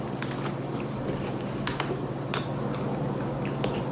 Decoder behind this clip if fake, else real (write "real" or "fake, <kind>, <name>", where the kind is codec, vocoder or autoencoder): real